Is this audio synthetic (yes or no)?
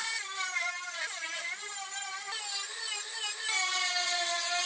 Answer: no